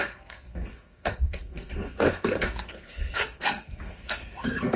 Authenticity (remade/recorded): remade